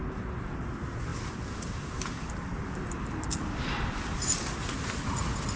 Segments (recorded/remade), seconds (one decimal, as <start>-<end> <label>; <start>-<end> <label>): 0.0-5.6 recorded